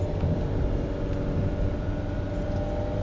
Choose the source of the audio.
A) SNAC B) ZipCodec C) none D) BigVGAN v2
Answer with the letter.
C